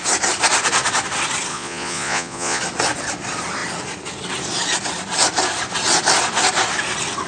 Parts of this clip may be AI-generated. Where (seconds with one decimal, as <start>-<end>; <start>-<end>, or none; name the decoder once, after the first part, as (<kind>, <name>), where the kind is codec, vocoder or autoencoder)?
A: 1.5-2.6 (vocoder, Vocos)